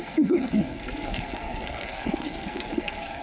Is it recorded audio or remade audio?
remade